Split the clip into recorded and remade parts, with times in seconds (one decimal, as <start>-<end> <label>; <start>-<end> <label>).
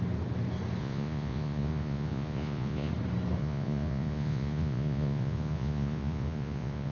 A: 0.0-0.8 recorded; 0.8-2.9 remade; 2.9-3.4 recorded; 3.4-6.9 remade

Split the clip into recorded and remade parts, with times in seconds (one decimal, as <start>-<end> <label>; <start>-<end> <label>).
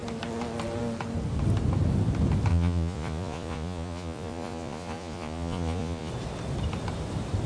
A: 0.0-2.5 recorded; 2.5-6.1 remade; 6.1-7.5 recorded